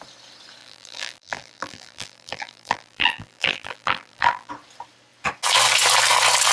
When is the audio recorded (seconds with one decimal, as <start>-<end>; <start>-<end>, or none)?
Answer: 0.0-0.6; 4.5-6.5